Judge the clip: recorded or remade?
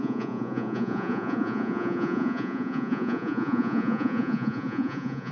remade